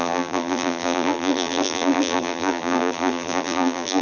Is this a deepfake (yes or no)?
yes